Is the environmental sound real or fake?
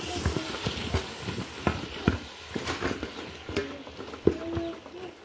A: real